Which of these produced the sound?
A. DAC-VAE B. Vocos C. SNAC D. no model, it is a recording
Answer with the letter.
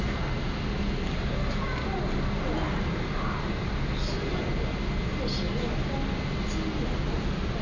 D